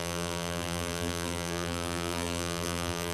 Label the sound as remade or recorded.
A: remade